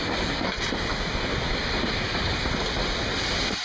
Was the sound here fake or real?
real